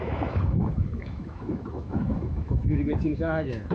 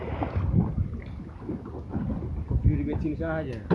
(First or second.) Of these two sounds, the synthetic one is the first